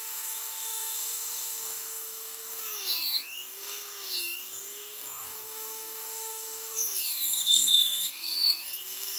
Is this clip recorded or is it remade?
remade